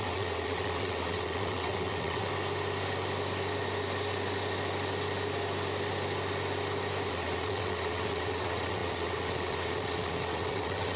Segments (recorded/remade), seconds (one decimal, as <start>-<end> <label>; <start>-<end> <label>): 0.0-2.3 remade; 2.3-7.1 recorded; 7.1-11.0 remade